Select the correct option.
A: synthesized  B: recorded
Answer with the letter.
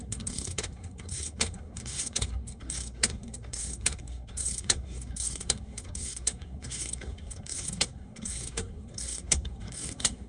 A